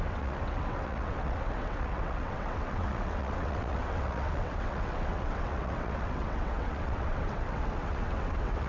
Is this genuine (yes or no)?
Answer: no